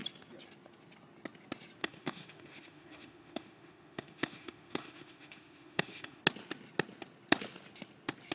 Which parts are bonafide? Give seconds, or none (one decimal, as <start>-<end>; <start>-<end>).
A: 0.0-1.8; 6.2-8.3